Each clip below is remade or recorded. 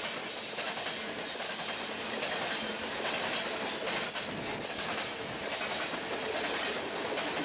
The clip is recorded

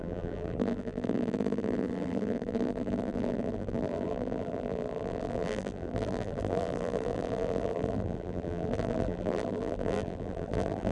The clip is remade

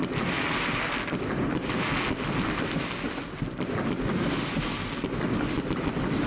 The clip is recorded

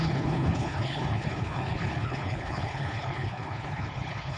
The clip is remade